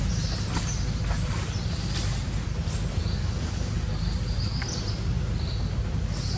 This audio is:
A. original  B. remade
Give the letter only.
A